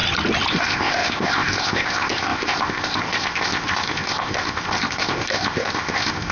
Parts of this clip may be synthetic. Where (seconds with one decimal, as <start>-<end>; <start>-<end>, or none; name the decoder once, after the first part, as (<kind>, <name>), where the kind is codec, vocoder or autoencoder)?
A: 0.5-6.3 (codec, ZipCodec)